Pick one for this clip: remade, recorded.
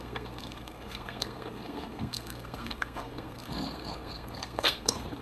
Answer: remade